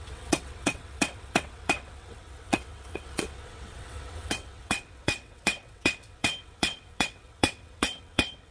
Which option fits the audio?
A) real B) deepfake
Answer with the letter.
B